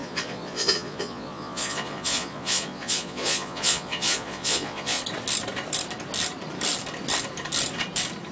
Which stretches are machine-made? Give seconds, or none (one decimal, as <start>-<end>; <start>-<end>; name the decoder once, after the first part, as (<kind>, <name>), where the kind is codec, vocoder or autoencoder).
0.0-5.0 (vocoder, Vocos)